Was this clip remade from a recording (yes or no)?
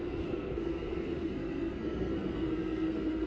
yes